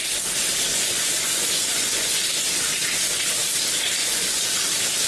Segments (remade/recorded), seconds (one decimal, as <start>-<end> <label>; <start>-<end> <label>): 0.0-0.7 recorded; 0.7-2.2 remade; 2.2-4.0 recorded; 4.0-4.5 remade; 4.5-5.1 recorded